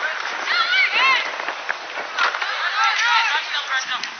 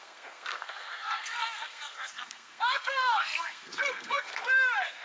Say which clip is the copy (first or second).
second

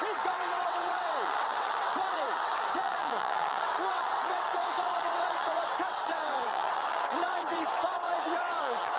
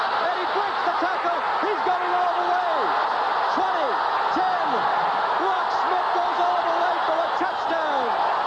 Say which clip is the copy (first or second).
first